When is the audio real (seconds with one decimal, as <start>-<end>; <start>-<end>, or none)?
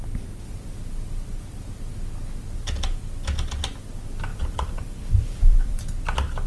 0.0-4.3; 5.8-6.5